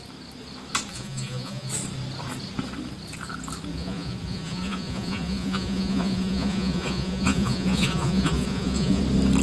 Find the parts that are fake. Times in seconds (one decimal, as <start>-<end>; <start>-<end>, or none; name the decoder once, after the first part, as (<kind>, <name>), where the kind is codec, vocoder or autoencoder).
0.9-1.7 (vocoder, Vocos); 3.7-9.0